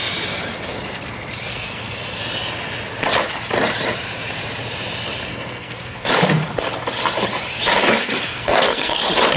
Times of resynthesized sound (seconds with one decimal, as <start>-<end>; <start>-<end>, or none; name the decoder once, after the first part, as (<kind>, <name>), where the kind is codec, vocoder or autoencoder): 1.5-2.2 (codec, SNAC); 5.3-6.1; 8.0-9.0